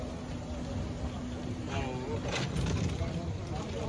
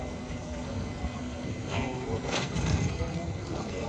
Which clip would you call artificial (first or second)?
second